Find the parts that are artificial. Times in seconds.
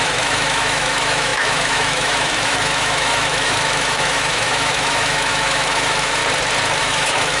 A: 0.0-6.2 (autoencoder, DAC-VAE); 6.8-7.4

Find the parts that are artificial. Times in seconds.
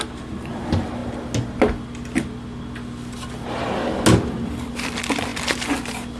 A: none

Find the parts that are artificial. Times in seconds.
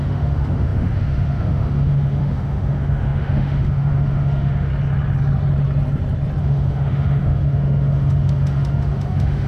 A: 0.0-4.7 (autoencoder, DAC-VAE); 6.4-9.5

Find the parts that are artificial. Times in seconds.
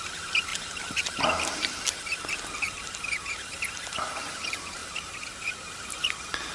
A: none